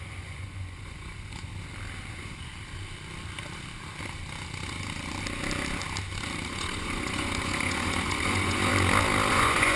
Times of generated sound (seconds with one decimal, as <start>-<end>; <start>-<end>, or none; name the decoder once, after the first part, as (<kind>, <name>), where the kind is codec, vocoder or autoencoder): 0.0-1.5 (vocoder, Vocos); 2.1-2.5; 6.5-8.7; 9.3-9.8